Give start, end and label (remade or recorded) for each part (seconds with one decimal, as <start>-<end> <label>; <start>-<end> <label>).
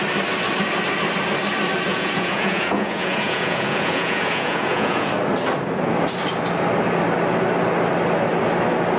0.0-1.9 recorded; 1.9-5.1 remade; 5.1-9.0 recorded